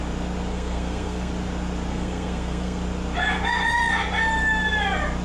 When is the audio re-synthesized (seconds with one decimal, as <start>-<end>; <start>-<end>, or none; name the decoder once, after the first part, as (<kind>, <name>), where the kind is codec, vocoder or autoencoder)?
0.5-1.3 (codec, SNAC); 1.9-2.8